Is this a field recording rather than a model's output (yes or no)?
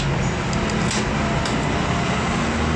yes